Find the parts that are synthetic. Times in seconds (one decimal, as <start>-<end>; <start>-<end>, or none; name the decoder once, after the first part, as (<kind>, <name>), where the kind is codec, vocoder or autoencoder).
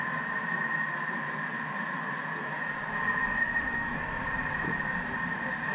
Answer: 3.4-4.0 (autoencoder, DAC-VAE)